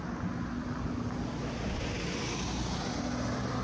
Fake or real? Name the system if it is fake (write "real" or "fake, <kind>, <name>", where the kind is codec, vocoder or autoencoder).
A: real